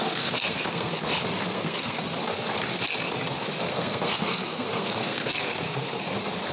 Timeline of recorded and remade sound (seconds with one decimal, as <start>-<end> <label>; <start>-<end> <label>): 0.0-1.0 remade; 1.0-1.4 recorded; 1.4-2.0 remade; 2.0-3.7 recorded; 3.7-6.0 remade; 6.0-6.5 recorded